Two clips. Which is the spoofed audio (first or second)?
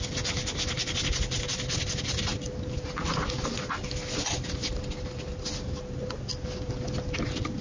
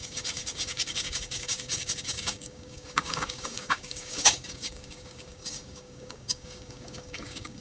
second